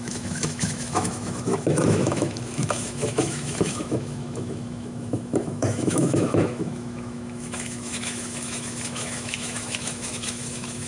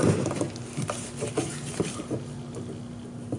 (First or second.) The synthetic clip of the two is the first